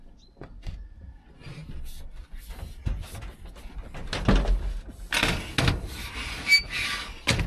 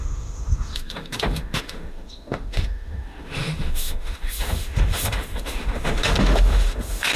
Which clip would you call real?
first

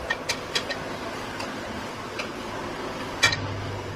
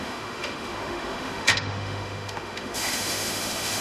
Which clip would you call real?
first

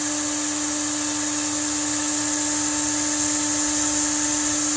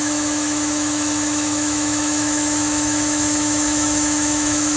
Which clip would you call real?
first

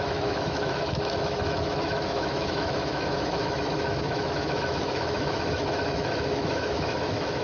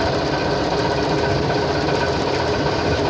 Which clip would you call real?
second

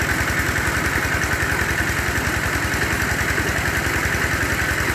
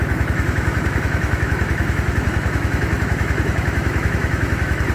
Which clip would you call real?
first